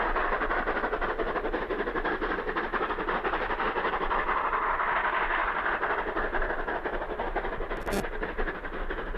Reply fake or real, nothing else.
real